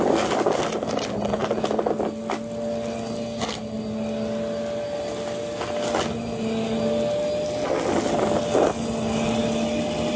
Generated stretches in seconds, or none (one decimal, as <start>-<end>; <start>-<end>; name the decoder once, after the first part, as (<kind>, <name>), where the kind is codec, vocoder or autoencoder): none